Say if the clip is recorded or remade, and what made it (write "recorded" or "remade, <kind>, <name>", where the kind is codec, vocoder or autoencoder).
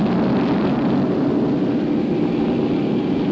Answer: recorded